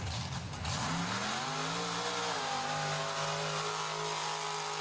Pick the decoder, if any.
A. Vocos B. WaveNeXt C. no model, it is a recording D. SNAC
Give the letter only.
C